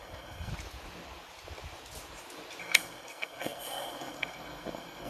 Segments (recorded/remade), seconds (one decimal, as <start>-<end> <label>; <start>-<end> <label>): 0.0-0.5 remade; 0.5-2.6 recorded; 2.6-5.1 remade